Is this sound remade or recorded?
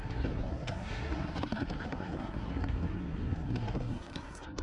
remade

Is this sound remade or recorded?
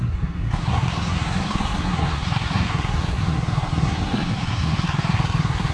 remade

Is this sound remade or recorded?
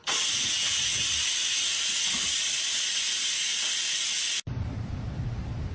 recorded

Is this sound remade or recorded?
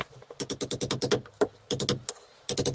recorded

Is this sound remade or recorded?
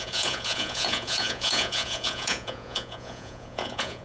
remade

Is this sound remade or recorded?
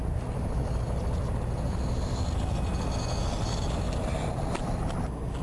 recorded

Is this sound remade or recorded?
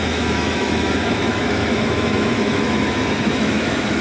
remade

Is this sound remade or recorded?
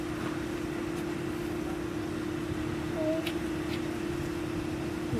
recorded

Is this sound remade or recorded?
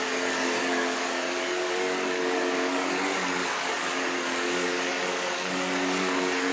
remade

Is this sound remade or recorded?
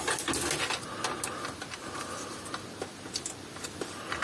recorded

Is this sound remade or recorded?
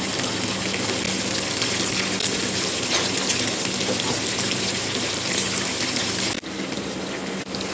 recorded